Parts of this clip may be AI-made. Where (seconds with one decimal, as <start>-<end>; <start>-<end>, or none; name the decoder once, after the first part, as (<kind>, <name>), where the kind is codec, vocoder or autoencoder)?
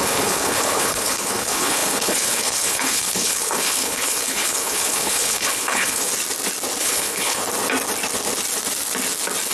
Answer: 0.0-6.1 (codec, HILCodec); 6.8-7.4